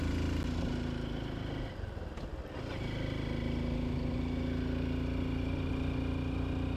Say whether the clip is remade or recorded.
recorded